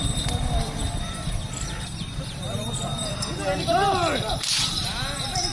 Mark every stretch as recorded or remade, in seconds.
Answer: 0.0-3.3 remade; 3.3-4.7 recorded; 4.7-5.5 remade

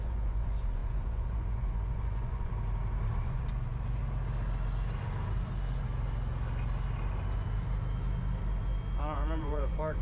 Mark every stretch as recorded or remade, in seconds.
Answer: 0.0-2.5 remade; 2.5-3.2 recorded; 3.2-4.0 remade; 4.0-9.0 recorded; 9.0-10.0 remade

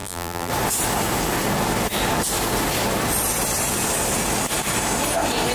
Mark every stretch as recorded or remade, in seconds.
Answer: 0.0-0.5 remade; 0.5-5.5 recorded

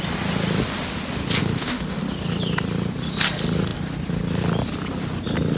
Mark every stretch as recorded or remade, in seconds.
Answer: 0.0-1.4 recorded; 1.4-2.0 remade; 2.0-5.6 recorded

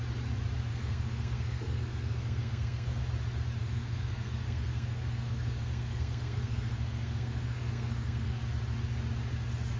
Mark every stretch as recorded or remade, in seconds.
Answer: 0.0-0.7 recorded; 0.7-3.0 remade; 3.0-3.6 recorded; 3.6-8.4 remade; 8.4-9.8 recorded

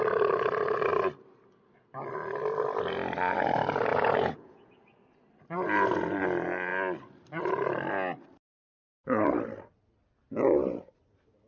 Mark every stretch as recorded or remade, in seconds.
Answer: 0.0-3.9 recorded; 3.9-4.8 remade; 4.8-11.5 recorded

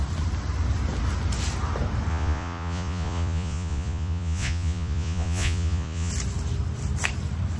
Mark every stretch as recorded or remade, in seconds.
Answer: 0.0-2.1 recorded; 2.1-6.1 remade; 6.1-7.6 recorded